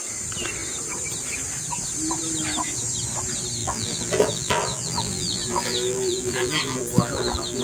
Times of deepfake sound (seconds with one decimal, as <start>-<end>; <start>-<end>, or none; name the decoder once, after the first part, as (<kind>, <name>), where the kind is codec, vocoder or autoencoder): 3.6-7.6 (vocoder, BigVGAN v2)